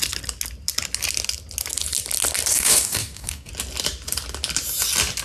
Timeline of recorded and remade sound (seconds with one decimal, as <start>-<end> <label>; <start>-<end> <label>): 0.0-2.5 recorded; 2.5-3.5 remade; 3.5-5.2 recorded